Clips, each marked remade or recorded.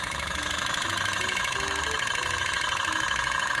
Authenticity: remade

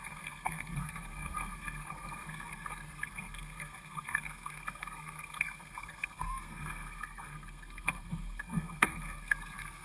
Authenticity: remade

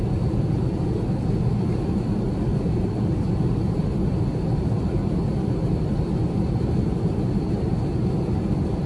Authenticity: recorded